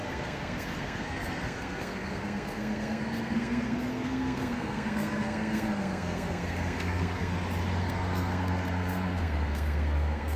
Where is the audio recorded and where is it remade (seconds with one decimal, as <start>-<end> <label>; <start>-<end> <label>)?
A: 0.0-7.3 remade; 7.3-7.8 recorded; 7.8-10.4 remade